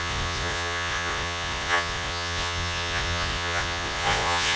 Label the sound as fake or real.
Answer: fake